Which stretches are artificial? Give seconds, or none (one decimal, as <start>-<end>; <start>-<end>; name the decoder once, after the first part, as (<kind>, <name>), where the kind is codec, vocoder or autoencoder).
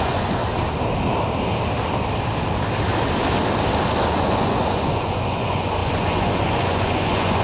0.0-0.4 (vocoder, Vocos); 4.1-7.4